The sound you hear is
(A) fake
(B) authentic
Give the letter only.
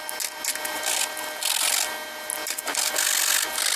B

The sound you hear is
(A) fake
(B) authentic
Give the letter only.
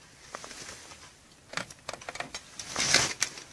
B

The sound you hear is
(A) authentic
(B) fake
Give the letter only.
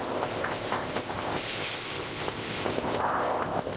B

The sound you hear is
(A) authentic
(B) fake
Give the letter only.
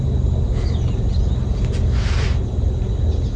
A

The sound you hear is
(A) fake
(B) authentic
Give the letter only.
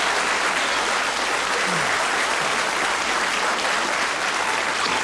B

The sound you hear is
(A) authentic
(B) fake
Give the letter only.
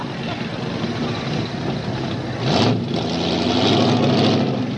A